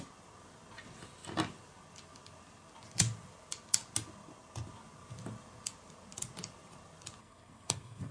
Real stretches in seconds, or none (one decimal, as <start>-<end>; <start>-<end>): 0.0-7.2